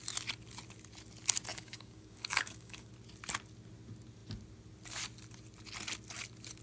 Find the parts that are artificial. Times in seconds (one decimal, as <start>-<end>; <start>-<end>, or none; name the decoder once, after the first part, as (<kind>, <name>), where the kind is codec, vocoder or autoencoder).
1.5-2.9 (codec, DAC)